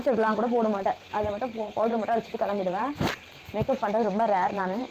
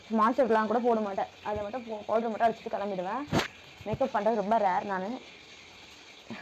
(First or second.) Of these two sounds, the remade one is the first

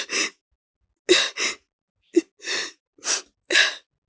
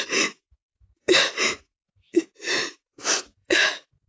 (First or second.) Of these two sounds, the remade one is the second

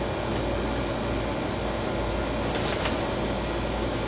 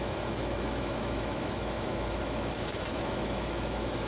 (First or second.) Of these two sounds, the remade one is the second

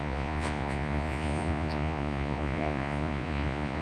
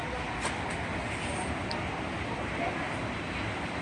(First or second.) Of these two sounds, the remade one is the first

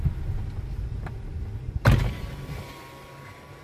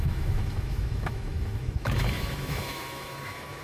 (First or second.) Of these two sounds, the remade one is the second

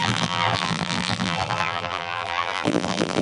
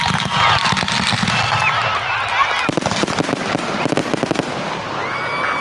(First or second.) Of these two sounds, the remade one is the first